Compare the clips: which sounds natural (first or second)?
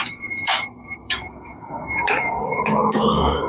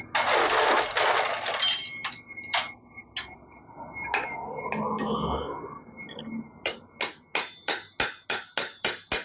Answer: second